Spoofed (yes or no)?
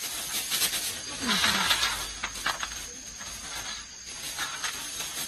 no